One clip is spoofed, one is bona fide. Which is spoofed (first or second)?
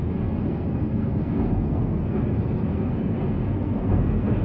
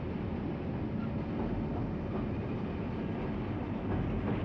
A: first